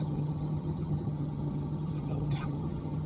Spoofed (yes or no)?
yes